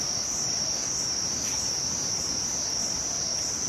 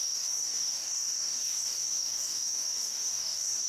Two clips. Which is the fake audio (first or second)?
second